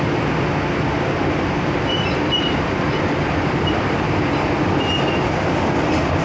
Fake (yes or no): yes